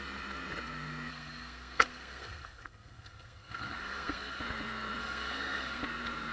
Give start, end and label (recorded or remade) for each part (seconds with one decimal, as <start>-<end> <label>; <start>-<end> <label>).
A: 0.0-1.1 recorded; 1.1-4.4 remade; 4.4-5.0 recorded; 5.0-5.8 remade; 5.8-6.3 recorded